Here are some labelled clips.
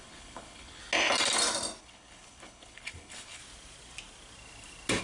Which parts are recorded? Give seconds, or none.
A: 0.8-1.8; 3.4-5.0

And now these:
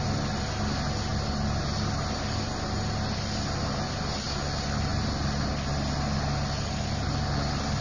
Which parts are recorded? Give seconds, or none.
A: 0.0-7.8

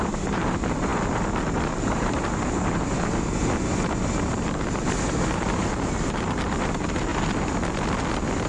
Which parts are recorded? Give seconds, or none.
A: 0.9-1.8; 7.1-8.5

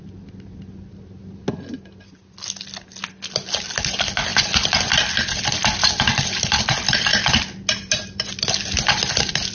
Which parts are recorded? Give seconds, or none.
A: 0.0-9.5